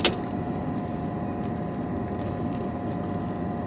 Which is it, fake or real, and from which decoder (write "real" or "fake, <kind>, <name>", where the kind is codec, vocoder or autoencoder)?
real